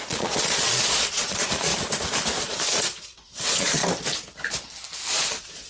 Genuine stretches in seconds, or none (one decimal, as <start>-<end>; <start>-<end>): 1.7-2.4; 3.8-5.1

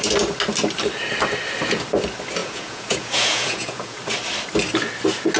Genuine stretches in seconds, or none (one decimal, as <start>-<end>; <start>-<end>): 0.0-2.4; 4.0-5.4

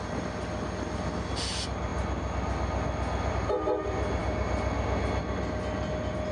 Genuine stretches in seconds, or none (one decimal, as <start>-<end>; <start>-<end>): 0.0-6.3